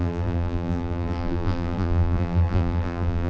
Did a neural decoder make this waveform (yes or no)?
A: yes